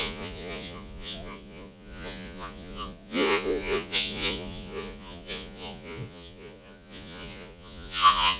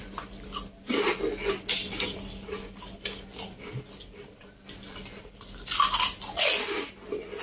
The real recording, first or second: second